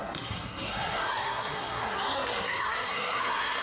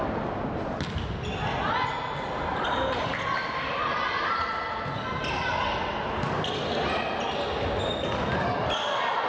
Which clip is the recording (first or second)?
second